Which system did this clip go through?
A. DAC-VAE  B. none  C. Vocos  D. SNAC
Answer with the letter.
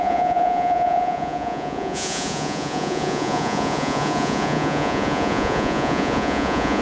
C